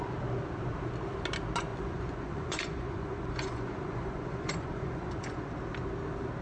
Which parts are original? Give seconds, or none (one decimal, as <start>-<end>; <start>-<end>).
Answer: 0.0-1.7; 5.5-6.4